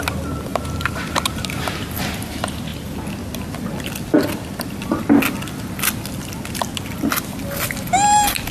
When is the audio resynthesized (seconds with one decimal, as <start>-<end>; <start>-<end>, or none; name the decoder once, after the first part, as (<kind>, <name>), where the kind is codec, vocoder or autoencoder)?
0.5-1.9 (vocoder, BigVGAN v2)